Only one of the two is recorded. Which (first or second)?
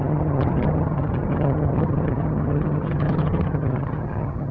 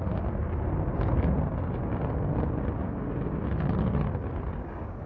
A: second